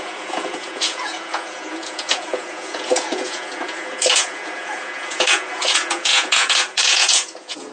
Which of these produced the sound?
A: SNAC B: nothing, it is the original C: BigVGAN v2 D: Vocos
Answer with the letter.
D